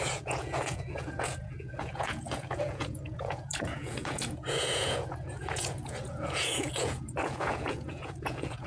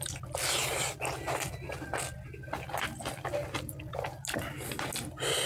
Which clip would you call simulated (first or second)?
first